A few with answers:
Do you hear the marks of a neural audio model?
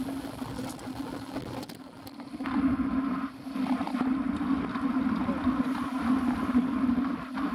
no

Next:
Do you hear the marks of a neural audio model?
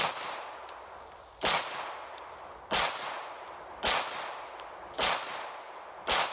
no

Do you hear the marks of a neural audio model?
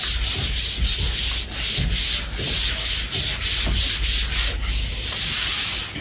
no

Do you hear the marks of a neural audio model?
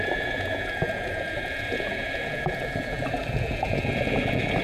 yes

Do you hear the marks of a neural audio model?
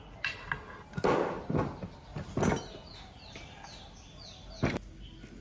no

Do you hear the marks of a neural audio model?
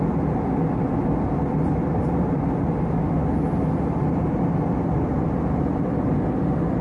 no